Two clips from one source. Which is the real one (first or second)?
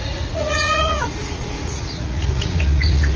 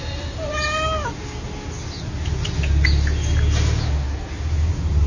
second